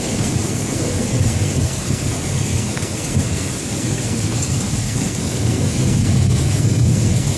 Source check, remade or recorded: remade